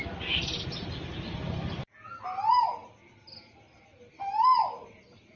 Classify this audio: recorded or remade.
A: recorded